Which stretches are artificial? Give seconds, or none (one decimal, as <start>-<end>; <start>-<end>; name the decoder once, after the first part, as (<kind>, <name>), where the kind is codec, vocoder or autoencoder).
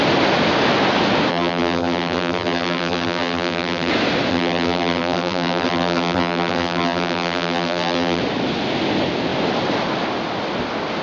1.3-3.9 (vocoder, BigVGAN v2); 4.3-8.2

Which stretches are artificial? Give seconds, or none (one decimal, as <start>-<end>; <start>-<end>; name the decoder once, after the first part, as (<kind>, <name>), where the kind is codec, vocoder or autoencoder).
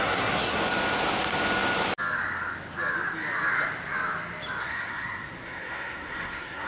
0.0-0.6 (codec, SNAC); 4.6-6.7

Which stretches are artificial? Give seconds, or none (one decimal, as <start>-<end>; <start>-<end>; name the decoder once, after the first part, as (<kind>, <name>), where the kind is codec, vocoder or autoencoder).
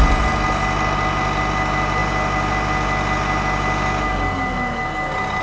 none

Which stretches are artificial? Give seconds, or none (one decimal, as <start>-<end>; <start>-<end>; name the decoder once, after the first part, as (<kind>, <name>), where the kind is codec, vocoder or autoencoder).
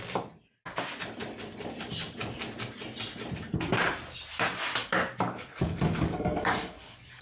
4.8-7.2 (codec, DAC)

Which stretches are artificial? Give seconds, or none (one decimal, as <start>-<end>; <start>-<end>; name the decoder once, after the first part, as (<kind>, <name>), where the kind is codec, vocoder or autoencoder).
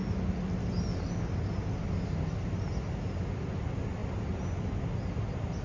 none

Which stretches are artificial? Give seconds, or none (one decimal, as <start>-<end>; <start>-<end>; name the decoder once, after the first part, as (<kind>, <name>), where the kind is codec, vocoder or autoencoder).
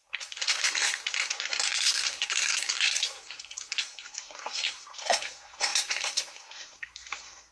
0.0-7.5 (codec, SNAC)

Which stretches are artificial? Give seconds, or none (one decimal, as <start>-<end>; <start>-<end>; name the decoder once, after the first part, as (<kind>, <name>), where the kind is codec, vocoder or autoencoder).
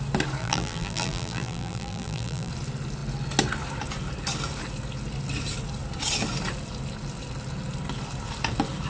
0.4-2.5 (vocoder, BigVGAN v2)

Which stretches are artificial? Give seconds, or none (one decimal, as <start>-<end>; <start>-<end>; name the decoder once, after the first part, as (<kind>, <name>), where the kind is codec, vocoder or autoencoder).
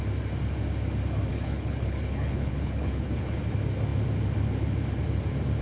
1.3-3.4 (codec, HILCodec)